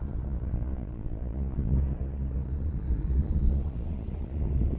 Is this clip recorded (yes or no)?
no